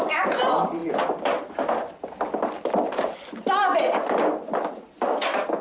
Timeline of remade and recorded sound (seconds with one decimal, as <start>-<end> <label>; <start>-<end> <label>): 0.0-5.6 recorded